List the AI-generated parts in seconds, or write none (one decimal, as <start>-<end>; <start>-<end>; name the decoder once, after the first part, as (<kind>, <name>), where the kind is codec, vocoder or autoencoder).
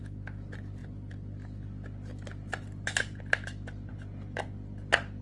none